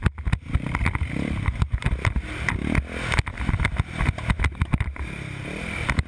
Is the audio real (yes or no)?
yes